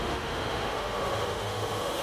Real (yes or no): no